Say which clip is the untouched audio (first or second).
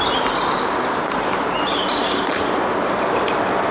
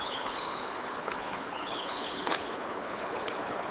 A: first